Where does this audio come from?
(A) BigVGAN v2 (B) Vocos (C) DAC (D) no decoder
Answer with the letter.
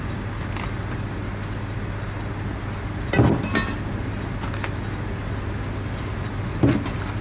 D